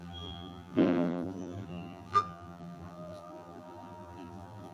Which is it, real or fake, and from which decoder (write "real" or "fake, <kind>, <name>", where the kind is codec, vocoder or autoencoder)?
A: fake, vocoder, BigVGAN v2